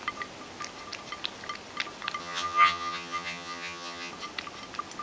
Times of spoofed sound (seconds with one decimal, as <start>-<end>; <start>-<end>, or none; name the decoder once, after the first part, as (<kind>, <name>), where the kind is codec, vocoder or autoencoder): 2.2-4.1 (vocoder, HiFi-GAN)